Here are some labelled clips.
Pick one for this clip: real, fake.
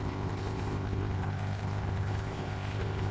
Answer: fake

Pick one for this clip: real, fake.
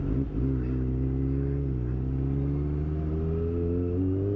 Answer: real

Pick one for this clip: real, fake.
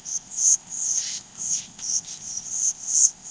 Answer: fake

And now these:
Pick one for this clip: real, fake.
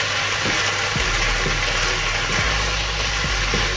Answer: real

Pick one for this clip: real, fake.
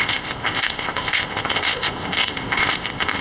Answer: fake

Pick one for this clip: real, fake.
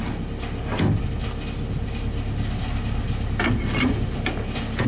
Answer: real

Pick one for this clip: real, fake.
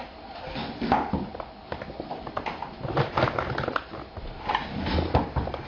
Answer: real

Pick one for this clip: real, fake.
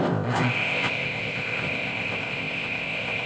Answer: fake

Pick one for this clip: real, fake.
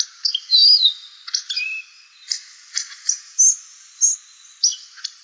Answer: real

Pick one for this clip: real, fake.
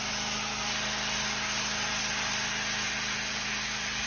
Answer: real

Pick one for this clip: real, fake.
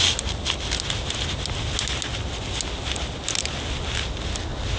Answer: real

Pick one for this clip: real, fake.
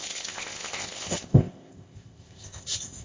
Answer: fake